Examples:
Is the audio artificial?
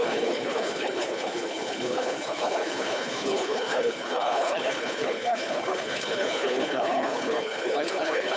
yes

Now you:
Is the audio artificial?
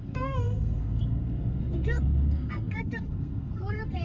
yes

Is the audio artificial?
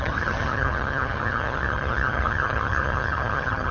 yes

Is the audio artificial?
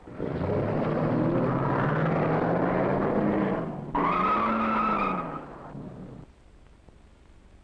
no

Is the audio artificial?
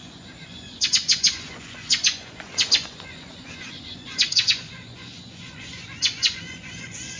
yes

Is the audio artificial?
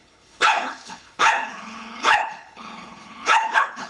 yes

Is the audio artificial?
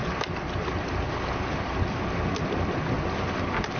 no